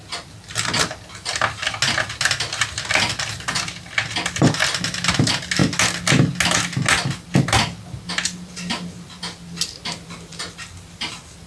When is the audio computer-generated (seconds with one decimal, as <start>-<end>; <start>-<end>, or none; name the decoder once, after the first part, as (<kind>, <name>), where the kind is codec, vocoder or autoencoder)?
none